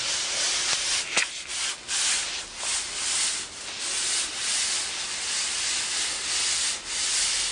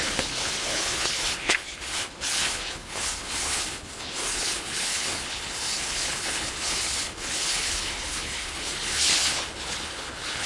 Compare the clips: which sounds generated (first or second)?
second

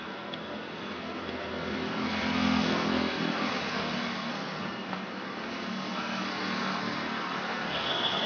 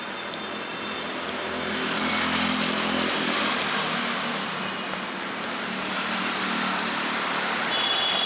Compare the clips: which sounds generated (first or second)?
first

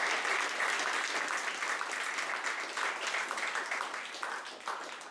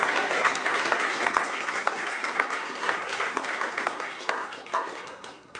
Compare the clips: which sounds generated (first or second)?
second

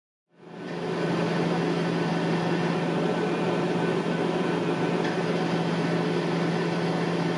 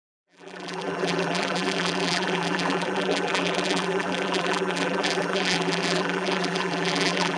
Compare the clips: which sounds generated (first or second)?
second